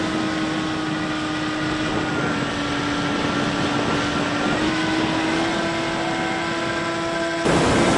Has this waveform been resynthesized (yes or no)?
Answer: no